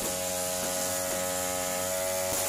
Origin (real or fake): real